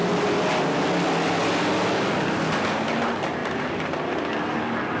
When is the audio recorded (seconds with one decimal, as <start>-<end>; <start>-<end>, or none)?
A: 0.0-5.0